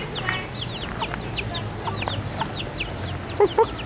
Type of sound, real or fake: real